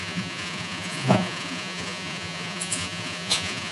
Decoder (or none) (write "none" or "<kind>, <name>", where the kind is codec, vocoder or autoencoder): vocoder, Vocos